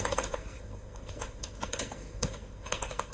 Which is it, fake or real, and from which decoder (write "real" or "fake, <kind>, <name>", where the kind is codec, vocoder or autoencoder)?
fake, codec, SNAC